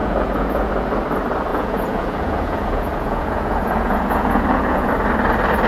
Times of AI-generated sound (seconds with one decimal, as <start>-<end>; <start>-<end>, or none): 0.0-0.7; 1.5-4.9